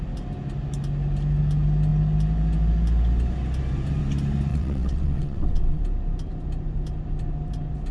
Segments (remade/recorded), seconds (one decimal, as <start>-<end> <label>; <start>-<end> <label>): 0.0-4.5 recorded; 4.5-5.8 remade; 5.8-7.9 recorded